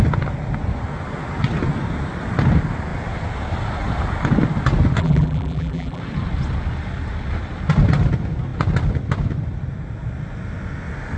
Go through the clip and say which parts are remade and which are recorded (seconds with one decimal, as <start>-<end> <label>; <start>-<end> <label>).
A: 0.0-5.0 recorded; 5.0-6.0 remade; 6.0-11.2 recorded